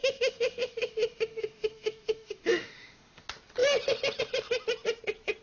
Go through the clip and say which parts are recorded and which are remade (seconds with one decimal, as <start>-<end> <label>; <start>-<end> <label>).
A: 0.0-3.2 remade; 3.2-5.4 recorded